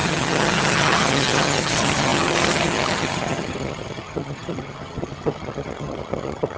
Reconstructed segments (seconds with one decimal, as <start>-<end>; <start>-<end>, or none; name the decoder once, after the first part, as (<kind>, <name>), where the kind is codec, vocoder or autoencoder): 0.0-6.6 (vocoder, HiFi-GAN)